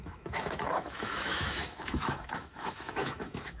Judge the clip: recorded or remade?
remade